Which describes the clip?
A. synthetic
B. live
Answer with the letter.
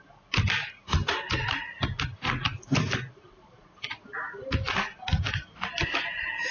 B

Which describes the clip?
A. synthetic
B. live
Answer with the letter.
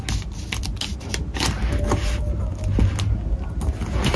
B